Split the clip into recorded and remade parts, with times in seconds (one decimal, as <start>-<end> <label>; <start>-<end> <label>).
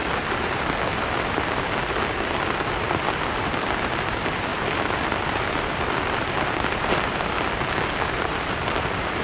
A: 0.0-4.5 recorded; 4.5-7.2 remade; 7.2-9.2 recorded